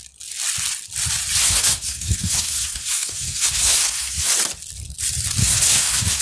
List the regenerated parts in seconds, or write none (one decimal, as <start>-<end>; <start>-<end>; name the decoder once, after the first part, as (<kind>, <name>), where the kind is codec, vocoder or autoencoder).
1.4-4.3 (codec, SNAC); 5.4-6.2